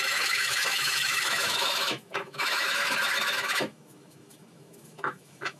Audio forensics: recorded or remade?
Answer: remade